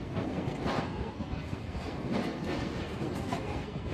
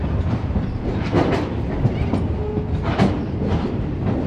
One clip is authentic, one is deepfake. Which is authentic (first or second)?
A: second